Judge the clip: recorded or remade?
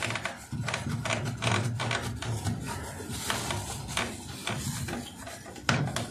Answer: recorded